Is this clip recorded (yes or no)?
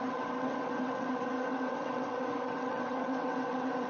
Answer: no